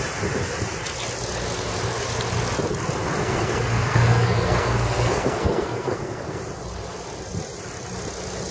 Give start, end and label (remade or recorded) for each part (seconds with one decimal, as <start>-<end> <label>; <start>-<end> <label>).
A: 0.0-3.2 recorded; 3.2-6.4 remade; 6.4-8.5 recorded